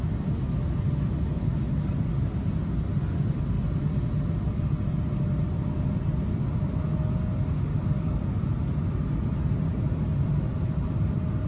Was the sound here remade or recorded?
recorded